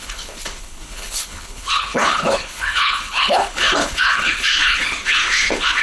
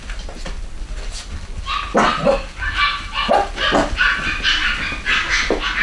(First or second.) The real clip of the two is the second